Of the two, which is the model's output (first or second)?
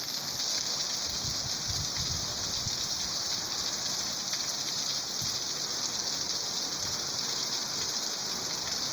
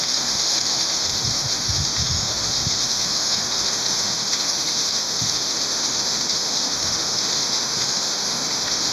second